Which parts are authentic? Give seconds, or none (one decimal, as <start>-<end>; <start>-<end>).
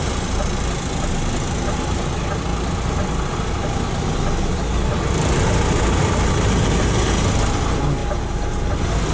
0.0-9.1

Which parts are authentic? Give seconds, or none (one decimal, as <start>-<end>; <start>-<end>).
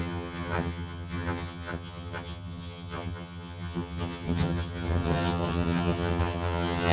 none